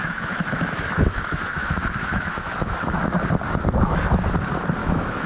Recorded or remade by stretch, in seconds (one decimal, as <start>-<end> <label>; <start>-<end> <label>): 0.0-3.1 remade; 3.1-4.8 recorded; 4.8-5.3 remade